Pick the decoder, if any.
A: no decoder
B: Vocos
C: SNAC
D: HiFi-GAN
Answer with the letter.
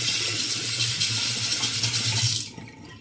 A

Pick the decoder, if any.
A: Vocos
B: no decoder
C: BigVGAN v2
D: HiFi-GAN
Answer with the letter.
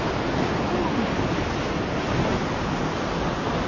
B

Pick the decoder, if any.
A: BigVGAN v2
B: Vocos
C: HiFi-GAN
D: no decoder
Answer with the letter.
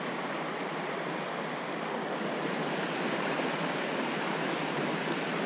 D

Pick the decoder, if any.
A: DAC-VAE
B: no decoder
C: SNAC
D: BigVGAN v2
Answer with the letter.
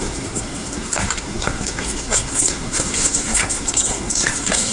C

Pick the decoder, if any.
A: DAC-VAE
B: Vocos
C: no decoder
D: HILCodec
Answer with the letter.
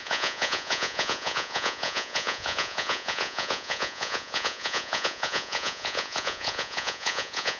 B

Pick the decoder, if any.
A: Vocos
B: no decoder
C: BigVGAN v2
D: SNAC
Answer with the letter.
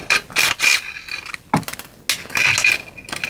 B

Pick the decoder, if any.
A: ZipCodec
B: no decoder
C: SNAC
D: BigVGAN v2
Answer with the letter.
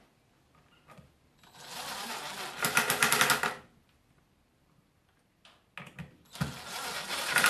B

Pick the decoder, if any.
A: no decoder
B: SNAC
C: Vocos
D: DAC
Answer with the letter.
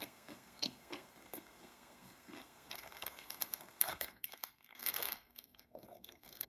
B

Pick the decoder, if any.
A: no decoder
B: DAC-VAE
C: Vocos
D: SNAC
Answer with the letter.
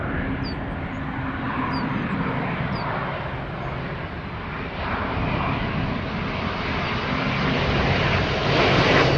A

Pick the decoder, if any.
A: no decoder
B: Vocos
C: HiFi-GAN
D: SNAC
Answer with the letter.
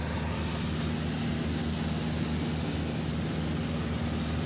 A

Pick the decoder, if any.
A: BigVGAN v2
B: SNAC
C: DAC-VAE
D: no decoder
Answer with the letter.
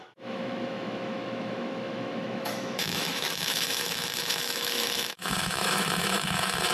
C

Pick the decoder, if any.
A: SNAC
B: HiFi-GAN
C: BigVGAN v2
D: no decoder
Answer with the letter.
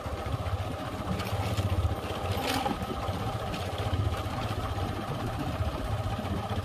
D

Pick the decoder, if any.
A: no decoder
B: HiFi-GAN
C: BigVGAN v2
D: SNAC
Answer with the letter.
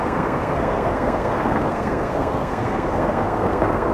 D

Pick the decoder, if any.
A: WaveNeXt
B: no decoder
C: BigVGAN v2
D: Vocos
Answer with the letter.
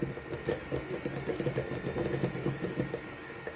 B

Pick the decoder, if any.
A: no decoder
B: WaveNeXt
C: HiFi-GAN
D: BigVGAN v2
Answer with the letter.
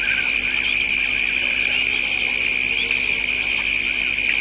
A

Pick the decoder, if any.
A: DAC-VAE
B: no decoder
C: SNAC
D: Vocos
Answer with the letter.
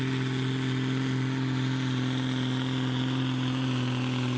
B